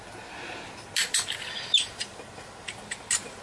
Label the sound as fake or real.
real